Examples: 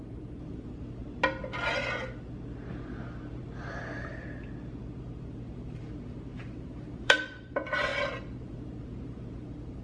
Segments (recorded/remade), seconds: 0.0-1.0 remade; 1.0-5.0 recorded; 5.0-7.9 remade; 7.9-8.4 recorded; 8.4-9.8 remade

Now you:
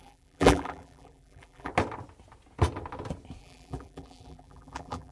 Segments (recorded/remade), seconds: 0.0-1.7 remade; 1.7-3.4 recorded; 3.4-5.1 remade

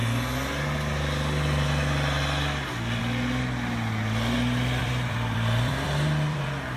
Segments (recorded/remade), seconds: 0.0-4.8 recorded; 4.8-6.8 remade